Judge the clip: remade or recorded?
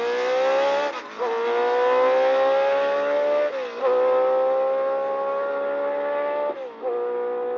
recorded